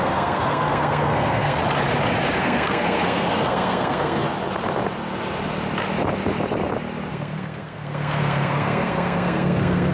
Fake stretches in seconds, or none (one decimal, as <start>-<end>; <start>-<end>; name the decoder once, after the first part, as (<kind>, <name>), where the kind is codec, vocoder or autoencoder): 0.0-1.6 (codec, SNAC); 2.4-4.2; 7.1-9.9